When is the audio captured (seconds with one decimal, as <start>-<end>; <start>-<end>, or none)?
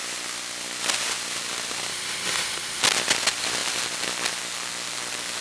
0.0-1.9; 2.8-5.4